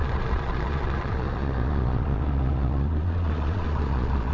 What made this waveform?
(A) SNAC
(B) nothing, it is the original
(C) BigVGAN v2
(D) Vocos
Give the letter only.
D